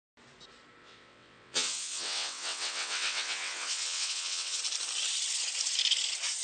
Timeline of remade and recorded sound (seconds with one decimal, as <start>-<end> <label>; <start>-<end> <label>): 0.0-0.8 recorded; 0.8-4.6 remade; 4.6-6.4 recorded